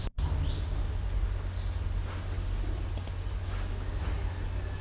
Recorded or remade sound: recorded